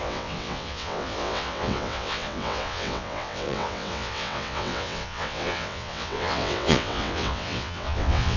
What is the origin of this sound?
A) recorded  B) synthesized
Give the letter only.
B